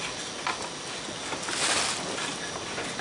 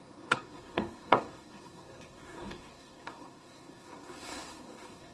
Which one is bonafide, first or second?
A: first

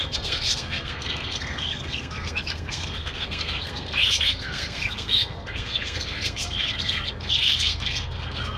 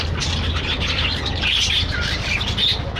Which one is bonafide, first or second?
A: second